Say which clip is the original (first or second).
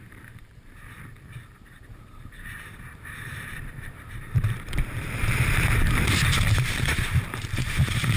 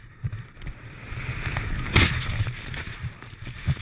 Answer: second